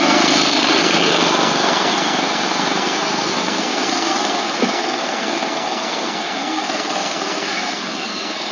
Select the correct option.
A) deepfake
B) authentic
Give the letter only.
A